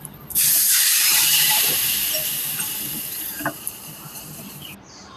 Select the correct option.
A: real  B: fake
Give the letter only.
B